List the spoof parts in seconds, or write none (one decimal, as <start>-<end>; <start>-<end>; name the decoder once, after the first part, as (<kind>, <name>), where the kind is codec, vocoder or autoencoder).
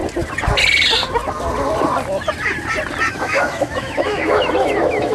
3.1-5.1 (autoencoder, DAC-VAE)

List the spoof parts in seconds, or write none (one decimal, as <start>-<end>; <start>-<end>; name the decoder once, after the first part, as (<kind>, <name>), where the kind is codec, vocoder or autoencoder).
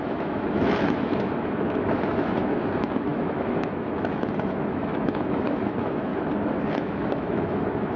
0.0-6.1 (autoencoder, DAC-VAE); 6.8-8.0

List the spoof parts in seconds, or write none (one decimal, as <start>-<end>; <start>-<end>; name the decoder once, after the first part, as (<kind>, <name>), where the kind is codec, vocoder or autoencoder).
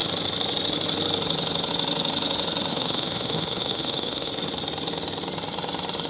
2.7-4.3 (autoencoder, DAC-VAE)